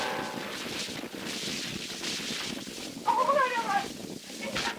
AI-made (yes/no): no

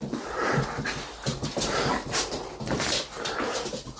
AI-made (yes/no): no